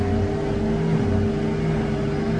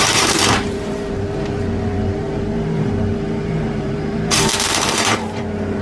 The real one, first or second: first